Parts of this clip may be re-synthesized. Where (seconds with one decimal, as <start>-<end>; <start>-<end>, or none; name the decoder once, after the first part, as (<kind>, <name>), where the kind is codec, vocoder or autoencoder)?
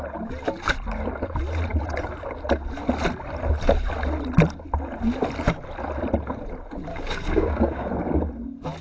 6.9-7.9 (codec, DAC)